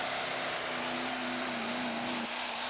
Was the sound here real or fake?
real